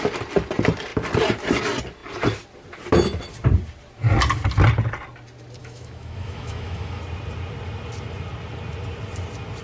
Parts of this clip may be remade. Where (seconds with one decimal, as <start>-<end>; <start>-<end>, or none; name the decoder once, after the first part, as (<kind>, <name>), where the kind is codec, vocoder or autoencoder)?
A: 5.6-7.0 (autoencoder, DAC-VAE)